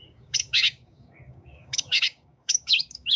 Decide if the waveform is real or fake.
fake